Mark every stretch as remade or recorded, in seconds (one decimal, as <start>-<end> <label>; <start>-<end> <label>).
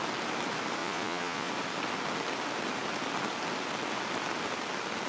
0.0-0.8 recorded; 0.8-1.5 remade; 1.5-5.1 recorded